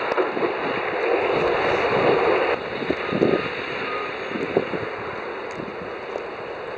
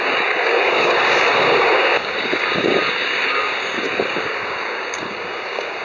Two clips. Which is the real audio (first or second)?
first